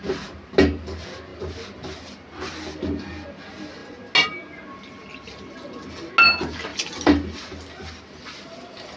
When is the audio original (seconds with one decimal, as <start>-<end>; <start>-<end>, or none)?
0.0-9.0